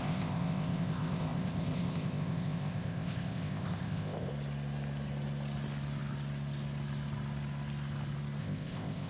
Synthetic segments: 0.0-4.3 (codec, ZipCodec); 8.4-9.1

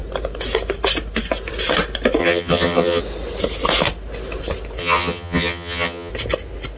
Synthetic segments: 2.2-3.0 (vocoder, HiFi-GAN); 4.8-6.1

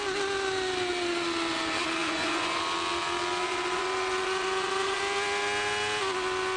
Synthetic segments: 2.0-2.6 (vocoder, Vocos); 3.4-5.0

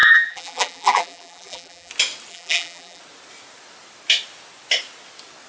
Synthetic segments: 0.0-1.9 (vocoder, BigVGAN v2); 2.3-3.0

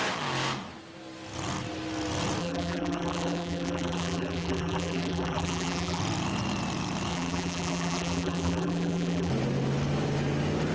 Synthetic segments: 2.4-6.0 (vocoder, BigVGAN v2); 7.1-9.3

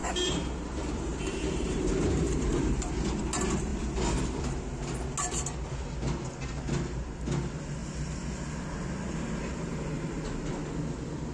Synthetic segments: 0.0-3.2 (vocoder, BigVGAN v2)

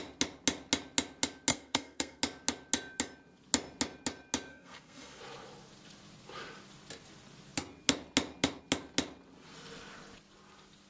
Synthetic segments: 1.5-2.2 (codec, SNAC); 4.5-5.2

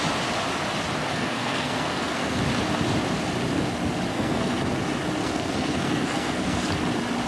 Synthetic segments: 1.1-2.4 (codec, SNAC); 4.1-4.7; 5.2-6.7